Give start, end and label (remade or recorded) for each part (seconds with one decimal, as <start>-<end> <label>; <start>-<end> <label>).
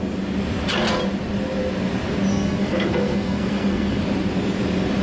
0.0-2.3 recorded; 2.3-4.0 remade; 4.0-5.0 recorded